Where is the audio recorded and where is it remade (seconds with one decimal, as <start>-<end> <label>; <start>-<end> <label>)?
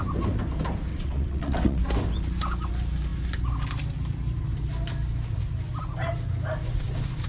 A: 0.0-0.9 recorded; 0.9-1.8 remade; 1.8-7.3 recorded